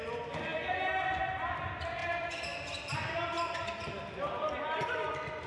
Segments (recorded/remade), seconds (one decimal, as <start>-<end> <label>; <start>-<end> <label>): 0.0-5.5 recorded